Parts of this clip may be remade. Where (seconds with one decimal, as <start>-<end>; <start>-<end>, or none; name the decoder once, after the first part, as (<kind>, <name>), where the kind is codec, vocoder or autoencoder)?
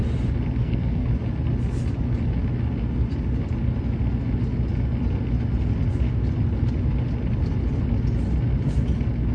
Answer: 0.6-1.1 (codec, SNAC)